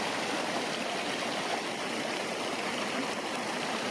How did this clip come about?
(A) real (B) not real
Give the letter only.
A